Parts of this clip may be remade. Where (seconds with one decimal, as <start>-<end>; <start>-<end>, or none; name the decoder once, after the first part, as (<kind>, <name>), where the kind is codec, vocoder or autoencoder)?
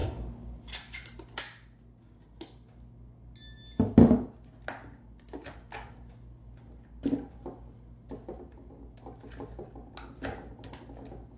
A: none